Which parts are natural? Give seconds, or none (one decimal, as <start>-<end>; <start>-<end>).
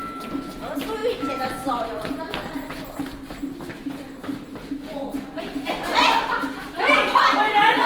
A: 0.0-7.9